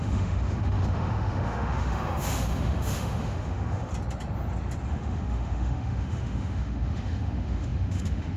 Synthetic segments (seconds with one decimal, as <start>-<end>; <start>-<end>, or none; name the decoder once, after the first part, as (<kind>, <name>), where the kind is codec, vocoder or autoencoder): 0.0-3.9 (autoencoder, DAC-VAE); 4.9-8.4